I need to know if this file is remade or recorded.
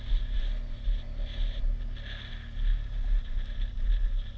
recorded